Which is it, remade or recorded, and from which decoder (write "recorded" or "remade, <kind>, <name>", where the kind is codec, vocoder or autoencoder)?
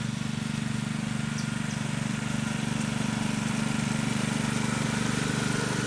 recorded